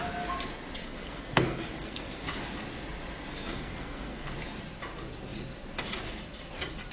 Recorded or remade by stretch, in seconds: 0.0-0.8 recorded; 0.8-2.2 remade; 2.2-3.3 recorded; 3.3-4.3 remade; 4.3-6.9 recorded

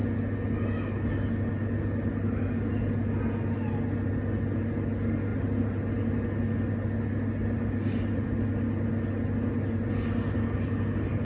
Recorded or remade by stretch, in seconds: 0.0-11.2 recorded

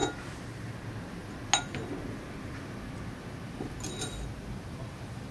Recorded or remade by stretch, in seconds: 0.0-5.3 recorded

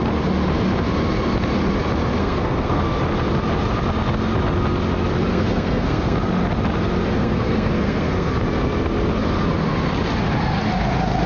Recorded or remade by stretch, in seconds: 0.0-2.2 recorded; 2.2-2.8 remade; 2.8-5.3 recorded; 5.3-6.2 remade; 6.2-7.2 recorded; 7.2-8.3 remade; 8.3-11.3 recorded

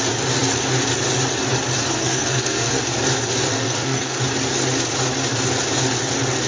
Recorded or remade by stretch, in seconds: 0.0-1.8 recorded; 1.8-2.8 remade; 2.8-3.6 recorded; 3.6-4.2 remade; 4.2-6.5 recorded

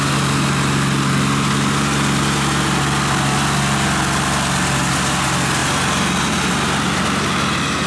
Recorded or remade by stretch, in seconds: 0.0-7.9 recorded

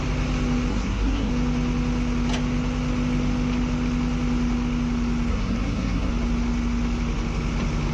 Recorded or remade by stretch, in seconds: 0.0-0.7 recorded; 0.7-1.3 remade; 1.3-5.3 recorded; 5.3-6.1 remade; 6.1-7.9 recorded